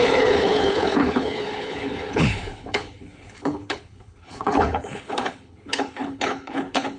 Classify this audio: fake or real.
fake